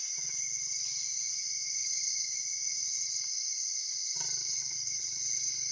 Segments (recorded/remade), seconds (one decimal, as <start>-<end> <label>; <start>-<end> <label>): 0.0-4.4 recorded; 4.4-5.2 remade; 5.2-5.7 recorded